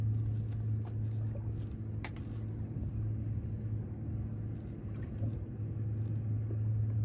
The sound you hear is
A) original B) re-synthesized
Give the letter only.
A